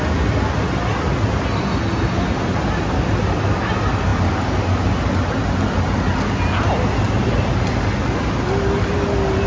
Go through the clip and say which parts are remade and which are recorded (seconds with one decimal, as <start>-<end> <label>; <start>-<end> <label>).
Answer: 0.0-9.5 recorded